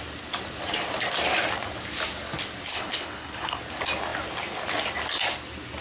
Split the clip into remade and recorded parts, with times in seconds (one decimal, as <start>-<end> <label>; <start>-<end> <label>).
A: 0.0-2.7 recorded; 2.7-3.6 remade; 3.6-5.8 recorded